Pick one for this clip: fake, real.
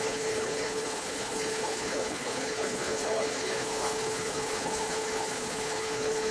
fake